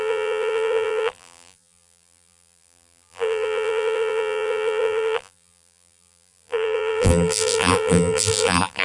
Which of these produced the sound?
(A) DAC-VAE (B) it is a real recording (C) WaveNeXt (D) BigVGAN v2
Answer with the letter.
D